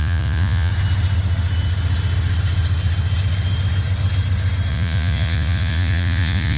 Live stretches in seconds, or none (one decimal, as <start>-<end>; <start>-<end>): 0.7-4.7

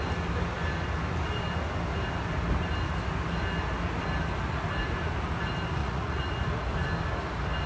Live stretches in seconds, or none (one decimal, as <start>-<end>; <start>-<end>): 0.0-5.8; 6.3-7.7